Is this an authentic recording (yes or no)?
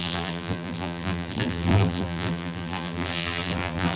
no